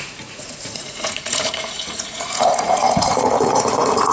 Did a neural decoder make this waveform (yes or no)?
yes